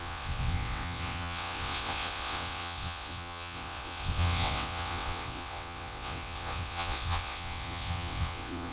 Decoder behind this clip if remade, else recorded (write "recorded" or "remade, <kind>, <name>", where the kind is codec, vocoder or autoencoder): remade, vocoder, WaveNeXt